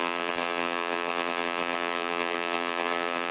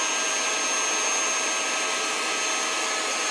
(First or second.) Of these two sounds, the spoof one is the first